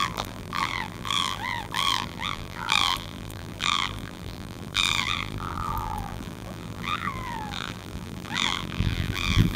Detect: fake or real fake